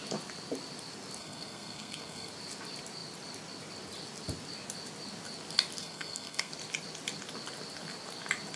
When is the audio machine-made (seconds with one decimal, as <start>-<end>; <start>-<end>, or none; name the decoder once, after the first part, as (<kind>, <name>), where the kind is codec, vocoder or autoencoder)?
1.2-2.3 (codec, SNAC); 5.8-6.5